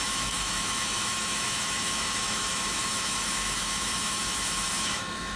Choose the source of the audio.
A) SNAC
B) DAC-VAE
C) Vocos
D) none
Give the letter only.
B